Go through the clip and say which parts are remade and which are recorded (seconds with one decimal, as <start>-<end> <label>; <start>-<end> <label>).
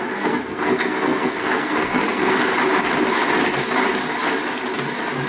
0.0-2.5 remade; 2.5-5.3 recorded